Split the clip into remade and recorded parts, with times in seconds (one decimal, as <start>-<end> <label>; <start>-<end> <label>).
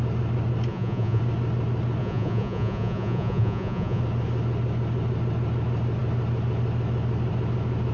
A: 0.0-0.7 recorded; 0.7-1.2 remade; 1.2-2.0 recorded; 2.0-4.0 remade; 4.0-7.9 recorded